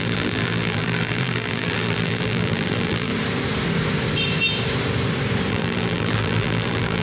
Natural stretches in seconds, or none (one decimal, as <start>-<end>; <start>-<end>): 3.1-5.5